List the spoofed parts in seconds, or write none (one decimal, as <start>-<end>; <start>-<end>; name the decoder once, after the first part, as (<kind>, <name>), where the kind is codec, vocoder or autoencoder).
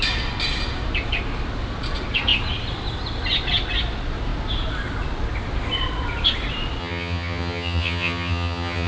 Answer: 6.8-8.9 (vocoder, HiFi-GAN)